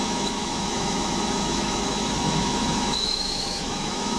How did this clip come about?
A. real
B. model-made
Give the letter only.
B